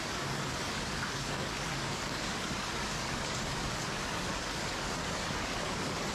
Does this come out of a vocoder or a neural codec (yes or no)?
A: yes